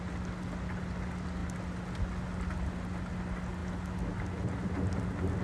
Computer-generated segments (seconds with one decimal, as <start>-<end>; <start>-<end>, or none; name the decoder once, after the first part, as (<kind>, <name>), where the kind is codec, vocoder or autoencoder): none